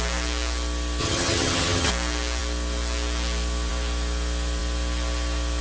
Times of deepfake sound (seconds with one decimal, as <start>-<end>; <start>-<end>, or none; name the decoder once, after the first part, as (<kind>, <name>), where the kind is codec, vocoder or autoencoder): 1.0-1.9 (vocoder, HiFi-GAN)